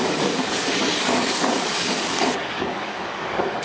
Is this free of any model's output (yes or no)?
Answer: no